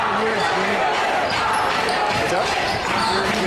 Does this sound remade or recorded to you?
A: remade